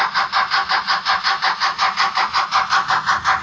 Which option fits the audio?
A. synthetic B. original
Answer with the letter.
B